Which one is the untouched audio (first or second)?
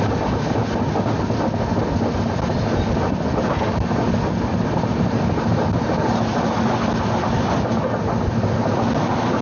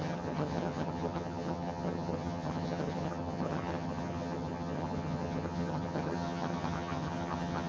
first